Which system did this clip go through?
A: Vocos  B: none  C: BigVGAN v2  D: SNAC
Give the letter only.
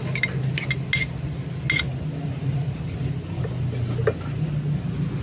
B